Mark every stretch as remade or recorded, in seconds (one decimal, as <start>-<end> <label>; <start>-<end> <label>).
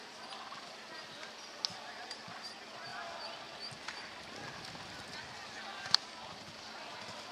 0.0-7.3 recorded